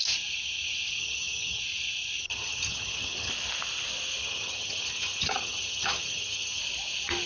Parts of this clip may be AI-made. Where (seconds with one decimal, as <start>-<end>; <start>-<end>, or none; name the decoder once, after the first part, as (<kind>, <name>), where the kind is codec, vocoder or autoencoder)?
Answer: 1.0-1.6 (vocoder, HiFi-GAN); 2.2-3.3; 4.2-6.6